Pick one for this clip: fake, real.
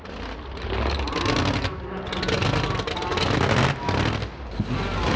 real